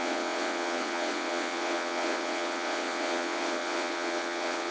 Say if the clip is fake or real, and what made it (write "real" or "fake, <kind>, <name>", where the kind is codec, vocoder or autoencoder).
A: fake, vocoder, WaveNeXt